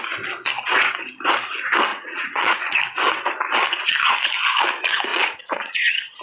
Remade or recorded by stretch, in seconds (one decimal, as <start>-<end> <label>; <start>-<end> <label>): 0.0-1.9 recorded; 1.9-2.8 remade; 2.8-5.1 recorded; 5.1-6.2 remade